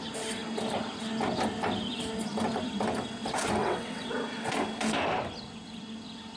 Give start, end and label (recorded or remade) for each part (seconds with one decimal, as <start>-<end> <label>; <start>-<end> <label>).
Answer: 0.0-3.6 recorded; 3.6-4.1 remade; 4.1-6.4 recorded